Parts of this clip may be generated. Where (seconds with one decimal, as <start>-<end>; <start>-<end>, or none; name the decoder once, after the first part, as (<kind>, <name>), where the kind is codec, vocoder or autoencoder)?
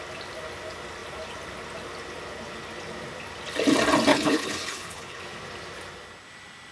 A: 4.1-5.2 (codec, HILCodec)